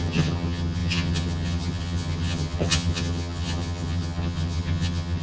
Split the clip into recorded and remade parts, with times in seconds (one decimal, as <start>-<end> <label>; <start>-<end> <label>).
0.0-5.2 remade